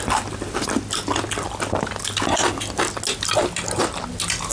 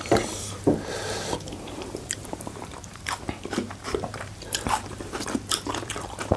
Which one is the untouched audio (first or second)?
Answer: first